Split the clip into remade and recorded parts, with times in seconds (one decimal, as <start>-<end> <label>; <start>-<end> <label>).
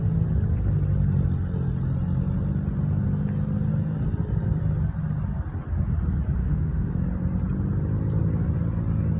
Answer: 0.0-6.4 recorded; 6.4-6.9 remade; 6.9-9.2 recorded